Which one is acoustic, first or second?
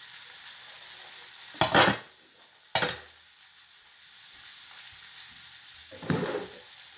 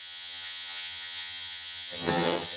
first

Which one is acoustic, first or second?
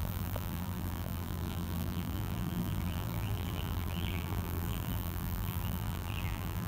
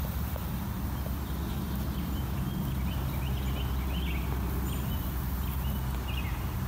second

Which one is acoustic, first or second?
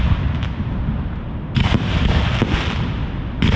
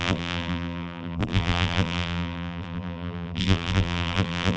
first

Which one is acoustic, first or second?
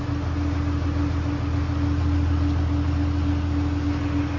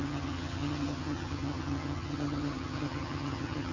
first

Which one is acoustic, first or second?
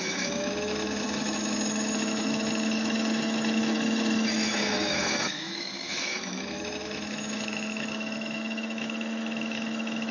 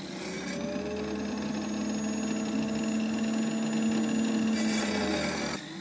second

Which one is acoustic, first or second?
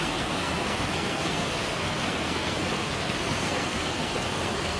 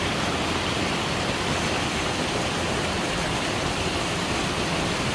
second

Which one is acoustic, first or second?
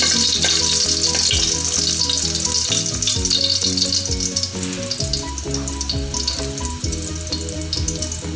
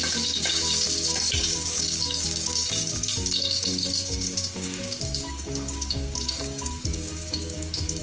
first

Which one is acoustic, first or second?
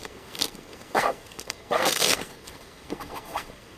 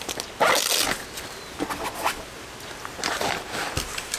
second